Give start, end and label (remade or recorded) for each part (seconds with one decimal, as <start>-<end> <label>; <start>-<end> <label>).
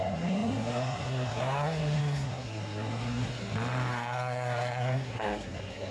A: 0.0-3.3 remade; 3.3-3.9 recorded; 3.9-5.9 remade